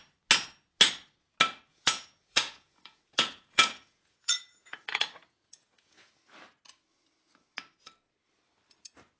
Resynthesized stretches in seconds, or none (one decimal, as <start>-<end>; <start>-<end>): 1.7-6.1